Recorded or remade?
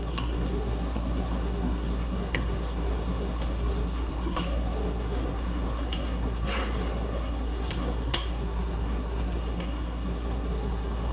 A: remade